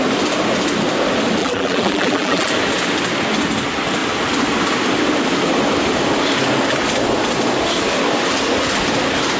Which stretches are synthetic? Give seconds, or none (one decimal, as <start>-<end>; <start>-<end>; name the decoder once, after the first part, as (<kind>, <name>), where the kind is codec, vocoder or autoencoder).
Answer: 1.4-2.5 (vocoder, BigVGAN v2)